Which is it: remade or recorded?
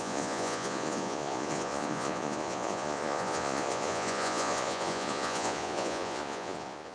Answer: remade